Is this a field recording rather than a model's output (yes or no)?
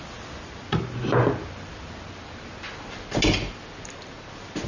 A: yes